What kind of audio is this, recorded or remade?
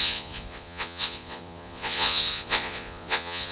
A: remade